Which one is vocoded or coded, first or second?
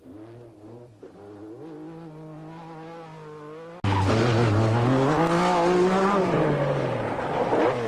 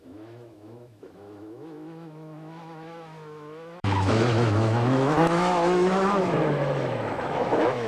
second